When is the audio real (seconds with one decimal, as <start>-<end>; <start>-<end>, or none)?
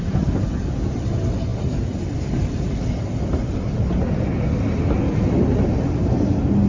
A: 0.0-6.7